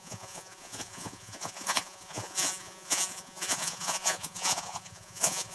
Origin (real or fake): fake